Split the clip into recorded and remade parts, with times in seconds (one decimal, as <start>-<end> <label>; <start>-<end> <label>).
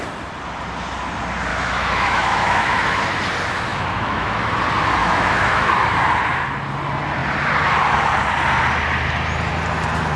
0.0-1.5 recorded; 1.5-3.0 remade; 3.0-3.7 recorded; 3.7-4.6 remade; 4.6-5.0 recorded; 5.0-5.7 remade; 5.7-10.2 recorded